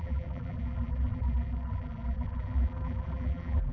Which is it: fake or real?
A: fake